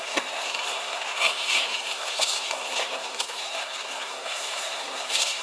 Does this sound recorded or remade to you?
remade